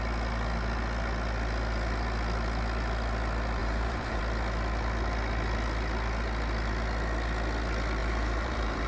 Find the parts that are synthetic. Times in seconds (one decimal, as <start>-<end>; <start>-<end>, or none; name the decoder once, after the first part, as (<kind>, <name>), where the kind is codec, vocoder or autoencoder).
3.6-4.2 (vocoder, BigVGAN v2); 8.0-8.9